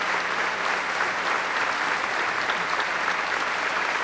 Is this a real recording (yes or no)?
yes